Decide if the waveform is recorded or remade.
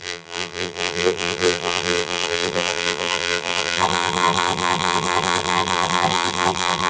remade